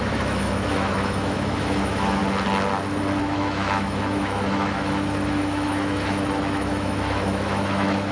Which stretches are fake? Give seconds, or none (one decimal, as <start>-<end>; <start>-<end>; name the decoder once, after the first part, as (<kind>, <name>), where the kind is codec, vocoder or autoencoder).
0.0-2.2 (autoencoder, DAC-VAE); 3.2-8.1

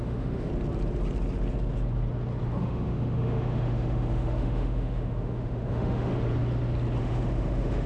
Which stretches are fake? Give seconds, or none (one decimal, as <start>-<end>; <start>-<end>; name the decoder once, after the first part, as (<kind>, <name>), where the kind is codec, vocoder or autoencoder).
0.0-0.5 (autoencoder, DAC-VAE); 2.6-6.1; 7.0-7.9

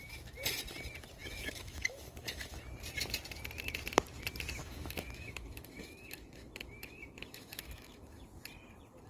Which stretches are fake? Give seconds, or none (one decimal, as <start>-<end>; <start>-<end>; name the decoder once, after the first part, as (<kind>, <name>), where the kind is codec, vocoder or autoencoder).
1.2-2.6 (autoencoder, DAC-VAE); 4.6-8.2